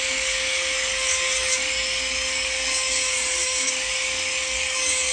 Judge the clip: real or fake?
fake